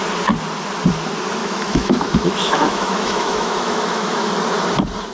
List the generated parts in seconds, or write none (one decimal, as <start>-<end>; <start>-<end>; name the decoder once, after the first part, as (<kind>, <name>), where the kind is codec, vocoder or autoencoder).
1.4-4.3 (autoencoder, DAC-VAE)